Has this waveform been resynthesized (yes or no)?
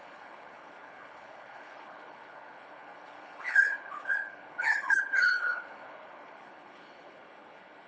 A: yes